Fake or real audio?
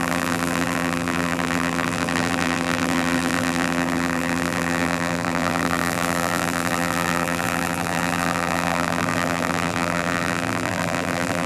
fake